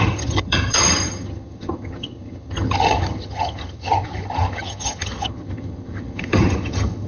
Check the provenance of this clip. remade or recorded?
remade